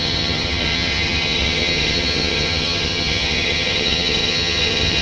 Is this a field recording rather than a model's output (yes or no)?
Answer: no